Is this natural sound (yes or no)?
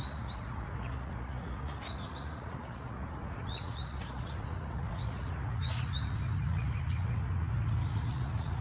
no